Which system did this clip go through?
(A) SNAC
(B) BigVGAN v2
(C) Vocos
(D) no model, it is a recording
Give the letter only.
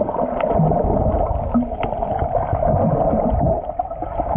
D